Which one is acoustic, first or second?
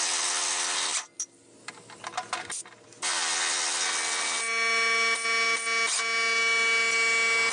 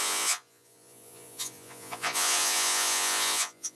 first